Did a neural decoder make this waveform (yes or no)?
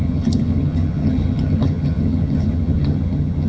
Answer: yes